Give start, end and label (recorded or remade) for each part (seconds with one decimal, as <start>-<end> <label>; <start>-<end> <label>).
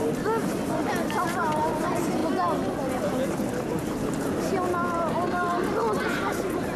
0.0-6.8 recorded